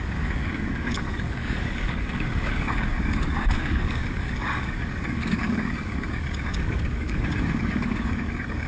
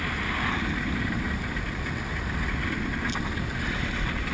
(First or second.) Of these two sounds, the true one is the second